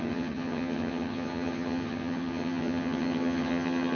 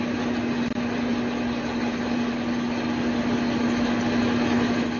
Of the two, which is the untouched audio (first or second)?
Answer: second